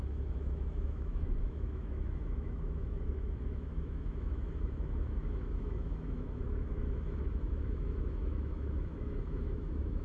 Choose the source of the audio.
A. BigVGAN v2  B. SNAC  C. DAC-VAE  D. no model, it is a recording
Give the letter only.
C